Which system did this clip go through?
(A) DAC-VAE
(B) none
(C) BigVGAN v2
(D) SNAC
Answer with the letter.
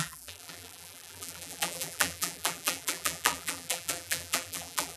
C